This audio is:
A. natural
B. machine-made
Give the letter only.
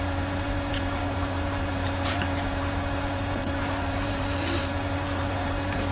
B